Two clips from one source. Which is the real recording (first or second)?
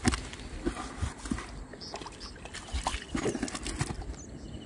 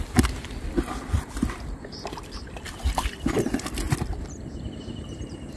first